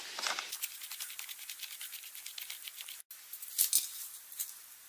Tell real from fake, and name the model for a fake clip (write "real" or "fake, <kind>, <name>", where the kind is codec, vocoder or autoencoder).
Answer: real